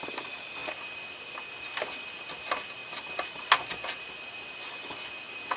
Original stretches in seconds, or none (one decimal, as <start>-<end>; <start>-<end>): 0.0-5.6